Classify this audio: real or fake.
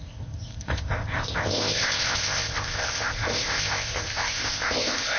fake